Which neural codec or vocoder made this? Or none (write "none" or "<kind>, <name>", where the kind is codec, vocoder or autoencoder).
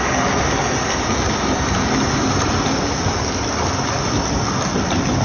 none